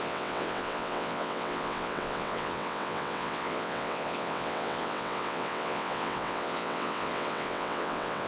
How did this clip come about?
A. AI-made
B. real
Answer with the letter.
A